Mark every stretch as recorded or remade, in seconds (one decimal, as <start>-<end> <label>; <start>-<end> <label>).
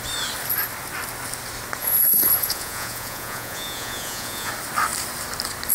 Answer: 0.0-1.8 recorded; 1.8-4.5 remade; 4.5-5.7 recorded